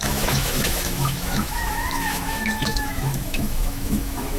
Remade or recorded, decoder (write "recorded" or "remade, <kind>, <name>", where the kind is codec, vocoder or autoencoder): remade, autoencoder, DAC-VAE